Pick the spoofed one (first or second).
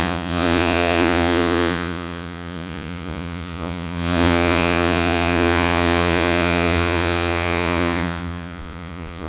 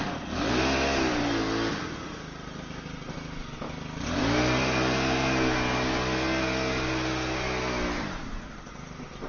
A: first